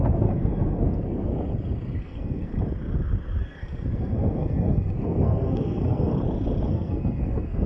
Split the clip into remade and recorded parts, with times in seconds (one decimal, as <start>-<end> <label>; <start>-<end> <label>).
0.0-1.3 remade; 1.3-2.0 recorded; 2.0-2.5 remade; 2.5-3.4 recorded; 3.4-6.1 remade; 6.1-6.7 recorded; 6.7-7.7 remade

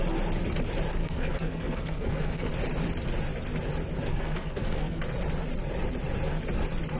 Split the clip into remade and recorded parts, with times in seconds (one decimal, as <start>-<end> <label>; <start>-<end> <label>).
0.0-1.0 recorded; 1.0-2.5 remade; 2.5-4.1 recorded; 4.1-5.0 remade; 5.0-7.0 recorded